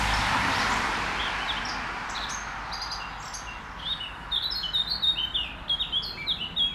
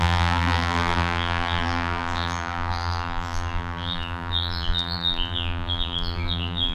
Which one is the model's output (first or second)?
second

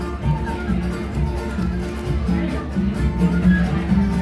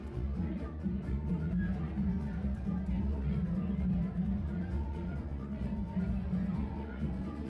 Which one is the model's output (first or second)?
second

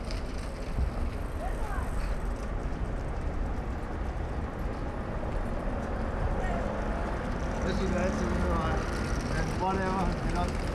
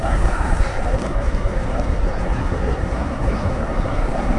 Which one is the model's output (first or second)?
second